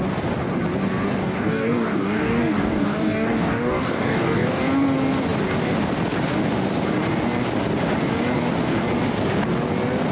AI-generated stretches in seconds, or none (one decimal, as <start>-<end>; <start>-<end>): 1.2-4.6